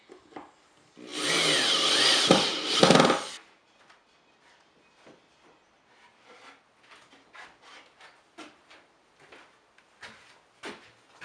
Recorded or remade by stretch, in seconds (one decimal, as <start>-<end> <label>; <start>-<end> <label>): 0.0-11.2 recorded